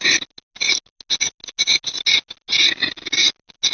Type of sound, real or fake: real